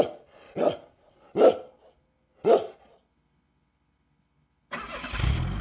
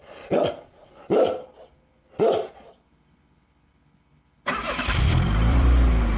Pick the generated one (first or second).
second